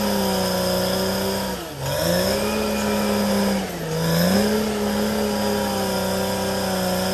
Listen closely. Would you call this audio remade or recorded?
recorded